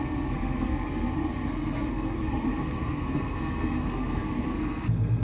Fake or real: fake